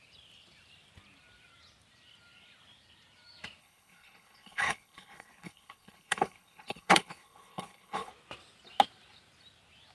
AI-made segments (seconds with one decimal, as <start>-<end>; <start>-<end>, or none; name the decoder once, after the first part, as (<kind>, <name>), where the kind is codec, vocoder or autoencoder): 3.6-8.1 (codec, HILCodec)